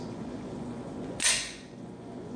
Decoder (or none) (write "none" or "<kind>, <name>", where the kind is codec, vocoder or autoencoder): vocoder, Vocos